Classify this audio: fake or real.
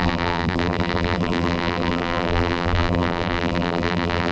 fake